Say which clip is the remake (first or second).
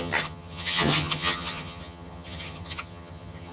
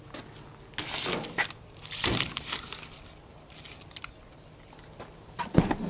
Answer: first